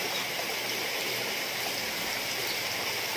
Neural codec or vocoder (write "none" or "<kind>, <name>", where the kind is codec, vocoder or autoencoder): none